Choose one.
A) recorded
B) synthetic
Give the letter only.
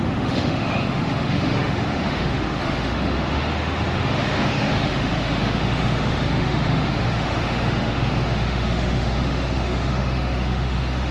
B